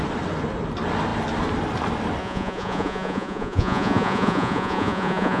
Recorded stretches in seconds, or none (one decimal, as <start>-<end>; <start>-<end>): 0.0-2.2